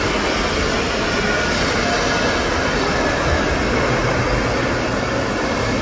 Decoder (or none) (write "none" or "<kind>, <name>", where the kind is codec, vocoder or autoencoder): none